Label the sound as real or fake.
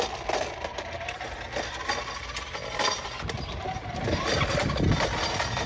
real